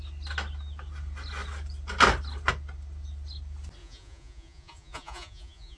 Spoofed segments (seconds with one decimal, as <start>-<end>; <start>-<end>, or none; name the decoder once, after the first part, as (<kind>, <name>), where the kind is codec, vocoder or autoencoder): 3.8-5.8 (vocoder, Vocos)